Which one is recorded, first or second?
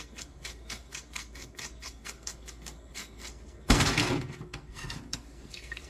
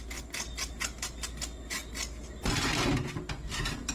second